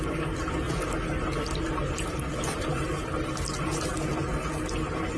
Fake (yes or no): no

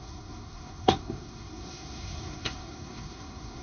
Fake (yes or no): yes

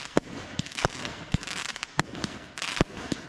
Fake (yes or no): yes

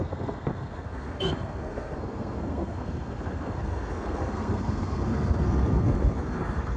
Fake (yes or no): yes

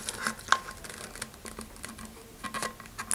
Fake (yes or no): no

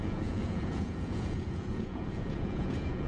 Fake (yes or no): yes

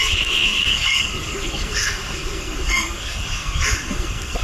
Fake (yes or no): yes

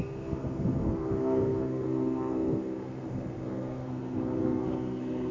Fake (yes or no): yes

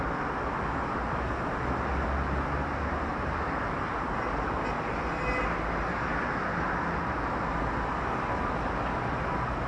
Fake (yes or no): no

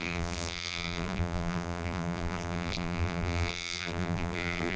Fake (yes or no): yes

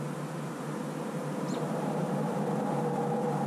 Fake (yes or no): no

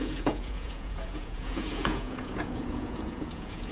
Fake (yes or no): yes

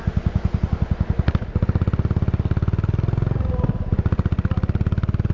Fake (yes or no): no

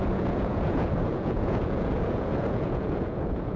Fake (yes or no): yes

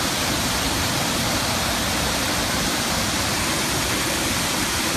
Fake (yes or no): yes